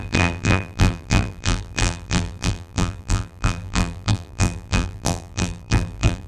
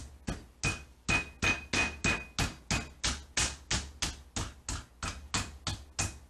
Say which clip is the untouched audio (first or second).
second